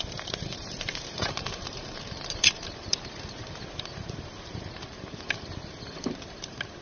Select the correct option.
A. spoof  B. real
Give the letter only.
A